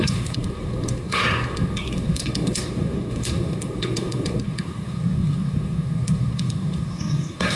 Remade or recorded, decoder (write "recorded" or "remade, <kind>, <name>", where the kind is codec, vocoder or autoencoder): remade, codec, SNAC